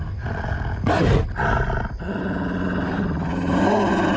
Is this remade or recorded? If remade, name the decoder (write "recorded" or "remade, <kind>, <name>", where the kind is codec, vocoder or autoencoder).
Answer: recorded